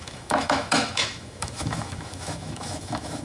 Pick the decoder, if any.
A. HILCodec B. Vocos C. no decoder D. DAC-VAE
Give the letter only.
D